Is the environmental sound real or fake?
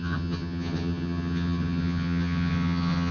fake